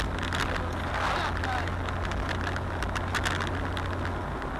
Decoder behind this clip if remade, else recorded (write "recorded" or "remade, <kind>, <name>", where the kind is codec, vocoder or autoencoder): recorded